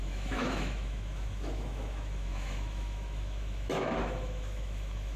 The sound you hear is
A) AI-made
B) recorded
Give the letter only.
A